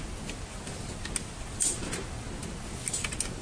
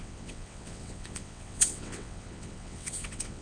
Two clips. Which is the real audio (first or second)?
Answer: first